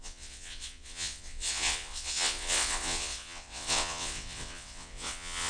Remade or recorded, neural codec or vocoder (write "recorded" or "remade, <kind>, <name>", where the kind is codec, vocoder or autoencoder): remade, vocoder, WaveNeXt